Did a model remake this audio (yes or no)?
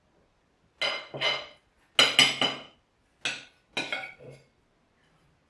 no